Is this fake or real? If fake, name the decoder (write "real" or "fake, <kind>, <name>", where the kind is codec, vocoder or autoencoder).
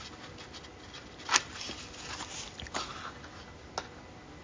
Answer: real